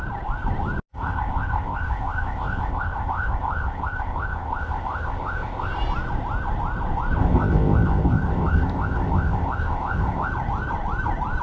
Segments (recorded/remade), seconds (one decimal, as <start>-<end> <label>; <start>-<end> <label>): 0.0-0.9 recorded; 0.9-5.7 remade; 5.7-7.2 recorded; 7.2-10.3 remade; 10.3-11.4 recorded